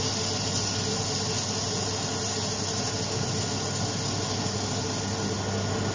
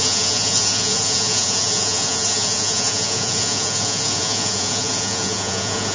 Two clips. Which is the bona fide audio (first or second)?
first